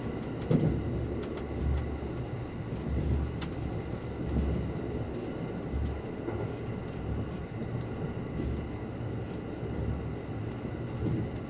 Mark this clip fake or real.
real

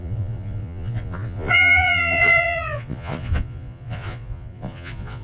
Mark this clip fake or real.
fake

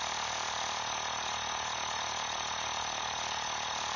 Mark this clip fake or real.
fake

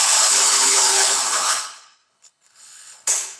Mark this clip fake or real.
fake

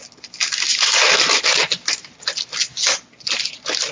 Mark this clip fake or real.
real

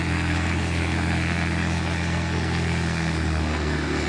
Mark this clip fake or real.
fake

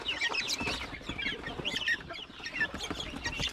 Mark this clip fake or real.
real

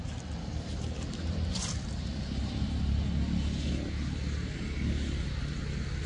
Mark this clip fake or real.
real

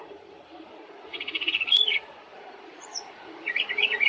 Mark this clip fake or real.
fake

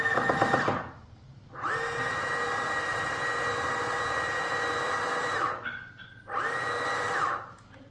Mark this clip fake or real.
real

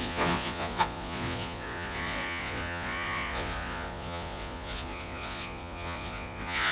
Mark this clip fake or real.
fake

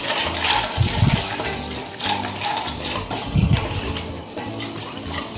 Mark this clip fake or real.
fake